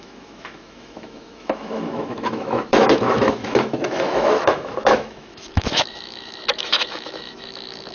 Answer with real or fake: fake